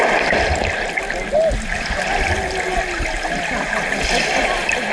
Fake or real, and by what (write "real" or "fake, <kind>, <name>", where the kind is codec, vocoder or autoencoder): real